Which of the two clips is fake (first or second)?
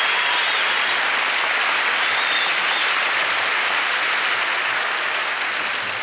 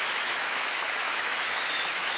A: second